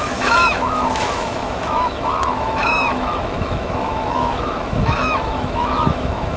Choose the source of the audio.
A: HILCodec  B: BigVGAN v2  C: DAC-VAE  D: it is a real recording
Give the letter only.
C